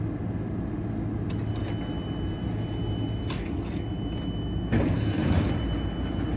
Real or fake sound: real